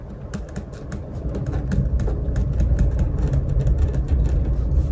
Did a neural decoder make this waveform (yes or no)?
no